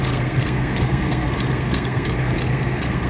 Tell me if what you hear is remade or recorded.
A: remade